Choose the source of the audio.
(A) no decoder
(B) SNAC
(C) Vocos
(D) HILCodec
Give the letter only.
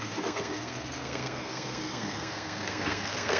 B